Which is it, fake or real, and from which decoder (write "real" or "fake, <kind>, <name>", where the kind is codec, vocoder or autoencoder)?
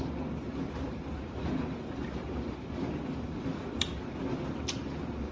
real